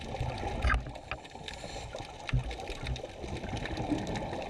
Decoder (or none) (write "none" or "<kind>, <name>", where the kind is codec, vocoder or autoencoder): none